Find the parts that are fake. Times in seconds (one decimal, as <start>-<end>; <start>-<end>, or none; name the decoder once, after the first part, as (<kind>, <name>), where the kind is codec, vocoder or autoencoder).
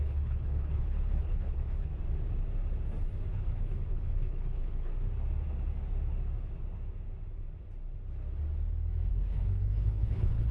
0.0-1.9 (codec, HILCodec); 3.3-4.9; 9.1-10.5